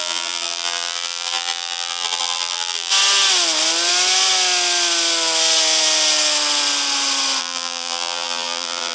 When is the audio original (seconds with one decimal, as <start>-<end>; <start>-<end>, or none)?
2.9-7.4